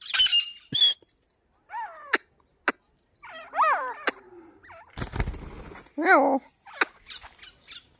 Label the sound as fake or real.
real